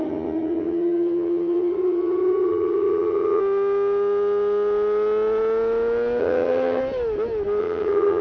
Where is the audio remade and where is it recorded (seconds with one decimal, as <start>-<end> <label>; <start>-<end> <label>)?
0.0-3.4 remade; 3.4-6.2 recorded; 6.2-6.8 remade; 6.8-7.6 recorded; 7.6-8.2 remade